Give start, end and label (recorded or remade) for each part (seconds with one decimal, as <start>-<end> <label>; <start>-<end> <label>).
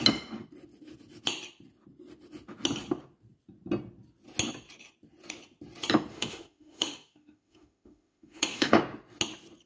0.0-6.1 recorded; 6.1-8.8 remade; 8.8-9.7 recorded